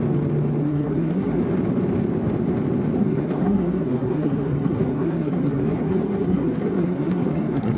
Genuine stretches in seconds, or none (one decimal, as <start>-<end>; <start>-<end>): 0.0-0.6; 1.4-3.0